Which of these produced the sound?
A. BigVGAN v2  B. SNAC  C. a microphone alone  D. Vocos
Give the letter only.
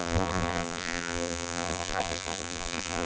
A